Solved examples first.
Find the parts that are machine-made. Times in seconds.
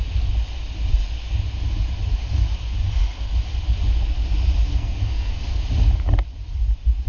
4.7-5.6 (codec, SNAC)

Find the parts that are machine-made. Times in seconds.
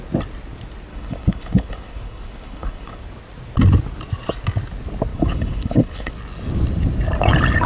0.9-3.0 (codec, HILCodec); 5.1-6.1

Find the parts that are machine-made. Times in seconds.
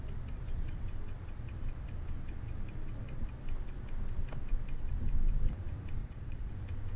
6.0-6.5 (vocoder, Vocos)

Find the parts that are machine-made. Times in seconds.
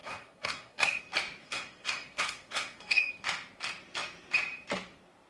0.0-1.0 (codec, SNAC); 1.4-3.1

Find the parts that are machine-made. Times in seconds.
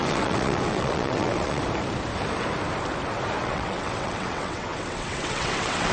0.0-1.6 (vocoder, WaveNeXt); 3.4-5.9